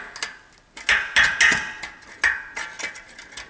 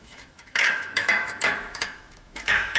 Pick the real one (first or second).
first